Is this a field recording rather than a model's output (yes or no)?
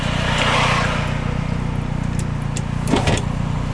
yes